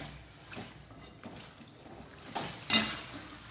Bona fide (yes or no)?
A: yes